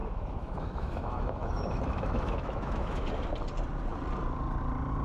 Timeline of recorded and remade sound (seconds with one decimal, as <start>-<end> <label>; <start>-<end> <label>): 0.0-3.0 remade; 3.0-5.0 recorded